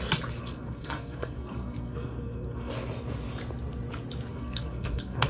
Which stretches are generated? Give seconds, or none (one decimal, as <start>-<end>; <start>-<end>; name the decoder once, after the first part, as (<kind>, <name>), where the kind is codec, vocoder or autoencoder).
0.4-2.7 (codec, SNAC); 4.3-5.3